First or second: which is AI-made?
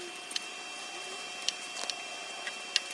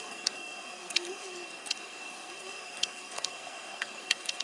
second